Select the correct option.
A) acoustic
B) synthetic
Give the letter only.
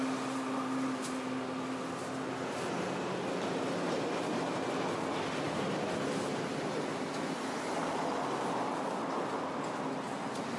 A